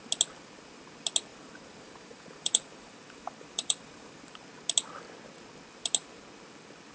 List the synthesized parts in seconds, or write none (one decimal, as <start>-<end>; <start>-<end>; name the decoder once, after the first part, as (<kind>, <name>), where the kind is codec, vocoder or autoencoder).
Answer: 1.3-4.2 (vocoder, BigVGAN v2)